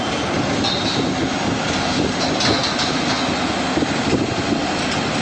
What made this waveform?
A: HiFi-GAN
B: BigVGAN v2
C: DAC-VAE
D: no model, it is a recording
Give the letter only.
D